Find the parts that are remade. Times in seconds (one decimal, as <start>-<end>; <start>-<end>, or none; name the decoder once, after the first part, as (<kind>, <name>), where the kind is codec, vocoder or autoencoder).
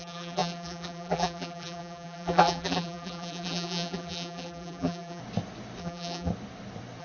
0.0-5.2 (vocoder, BigVGAN v2); 5.8-6.3